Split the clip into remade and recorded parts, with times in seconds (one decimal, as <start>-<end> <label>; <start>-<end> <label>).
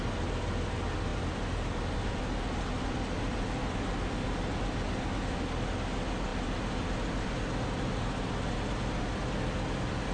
0.0-10.1 recorded